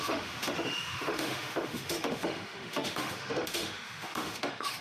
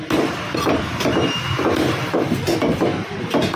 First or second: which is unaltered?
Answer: second